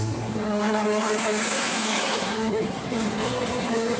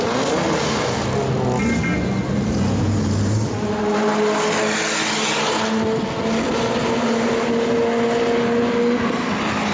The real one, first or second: second